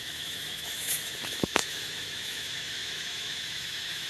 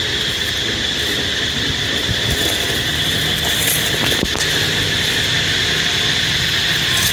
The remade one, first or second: first